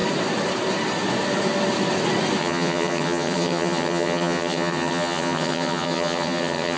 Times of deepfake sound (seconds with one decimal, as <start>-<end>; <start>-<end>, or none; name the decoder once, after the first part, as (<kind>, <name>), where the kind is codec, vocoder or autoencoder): 2.4-6.8 (vocoder, HiFi-GAN)